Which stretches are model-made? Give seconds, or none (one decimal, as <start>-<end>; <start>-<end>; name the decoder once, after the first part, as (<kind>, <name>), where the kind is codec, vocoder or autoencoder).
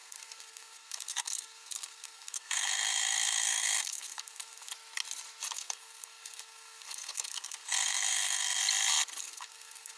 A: 0.0-4.7 (codec, SNAC); 5.5-8.6; 9.2-10.0